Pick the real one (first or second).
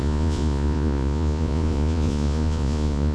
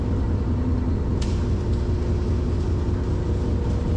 second